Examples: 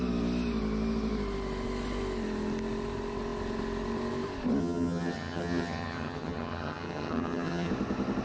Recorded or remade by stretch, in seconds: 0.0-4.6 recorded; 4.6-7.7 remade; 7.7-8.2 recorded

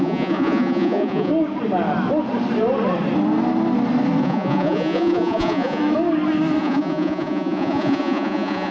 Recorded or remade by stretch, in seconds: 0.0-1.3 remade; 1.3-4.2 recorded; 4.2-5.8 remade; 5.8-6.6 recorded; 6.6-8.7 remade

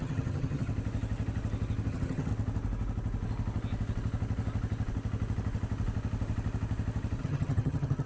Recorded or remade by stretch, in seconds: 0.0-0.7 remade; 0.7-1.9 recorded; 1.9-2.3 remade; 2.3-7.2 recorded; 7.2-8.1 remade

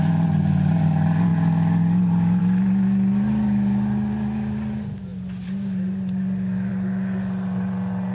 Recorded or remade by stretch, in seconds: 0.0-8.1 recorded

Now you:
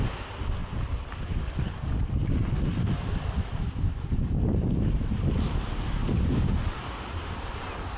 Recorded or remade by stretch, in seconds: 0.0-0.6 recorded; 0.6-5.1 remade; 5.1-6.0 recorded; 6.0-7.6 remade; 7.6-8.0 recorded

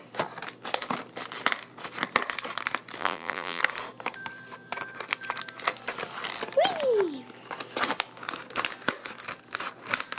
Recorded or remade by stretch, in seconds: 0.0-3.0 recorded; 3.0-3.6 remade; 3.6-10.2 recorded